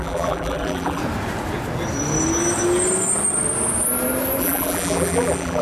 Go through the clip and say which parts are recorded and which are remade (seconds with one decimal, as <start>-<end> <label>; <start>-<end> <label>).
0.0-1.0 remade; 1.0-4.4 recorded; 4.4-5.6 remade